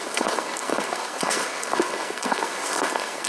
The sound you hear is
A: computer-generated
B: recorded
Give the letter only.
A